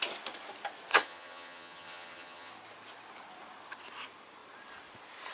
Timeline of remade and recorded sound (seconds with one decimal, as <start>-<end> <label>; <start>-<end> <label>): 0.0-0.9 recorded; 0.9-2.5 remade; 2.5-5.3 recorded

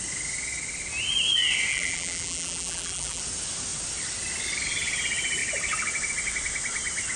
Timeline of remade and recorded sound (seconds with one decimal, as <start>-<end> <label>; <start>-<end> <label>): 0.0-1.7 recorded; 1.7-3.2 remade; 3.2-7.2 recorded

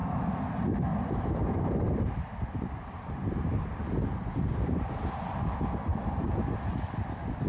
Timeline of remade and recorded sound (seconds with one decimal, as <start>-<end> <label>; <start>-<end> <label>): 0.0-0.9 recorded; 0.9-5.1 remade; 5.1-7.5 recorded

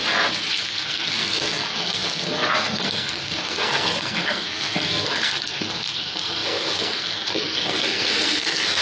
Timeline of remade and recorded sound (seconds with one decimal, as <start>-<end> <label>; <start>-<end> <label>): 0.0-0.5 recorded; 0.5-8.8 remade